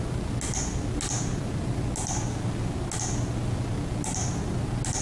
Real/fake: real